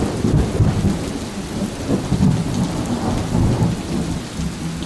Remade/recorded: recorded